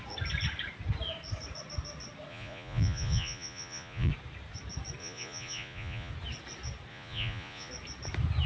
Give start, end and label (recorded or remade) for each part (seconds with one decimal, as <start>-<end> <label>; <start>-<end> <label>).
0.0-2.3 recorded; 2.3-4.1 remade; 4.1-5.0 recorded; 5.0-6.1 remade; 6.1-6.9 recorded; 6.9-7.7 remade; 7.7-8.5 recorded